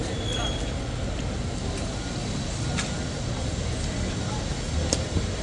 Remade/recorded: recorded